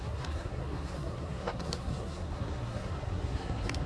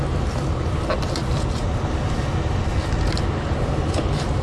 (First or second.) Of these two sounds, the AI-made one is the first